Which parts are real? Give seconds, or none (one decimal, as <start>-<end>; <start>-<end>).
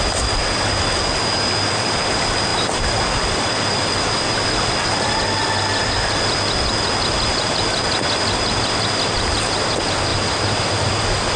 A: 0.0-11.4